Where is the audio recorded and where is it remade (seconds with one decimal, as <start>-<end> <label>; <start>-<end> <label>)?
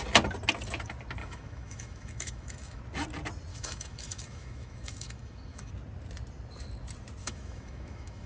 0.0-1.2 recorded; 1.2-2.8 remade; 2.8-3.5 recorded; 3.5-5.7 remade; 5.7-7.2 recorded; 7.2-8.3 remade